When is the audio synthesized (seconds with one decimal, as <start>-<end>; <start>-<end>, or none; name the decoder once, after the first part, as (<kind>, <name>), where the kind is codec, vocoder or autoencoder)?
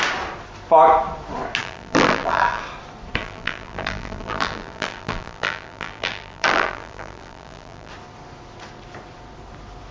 1.6-2.6 (vocoder, BigVGAN v2); 3.2-7.9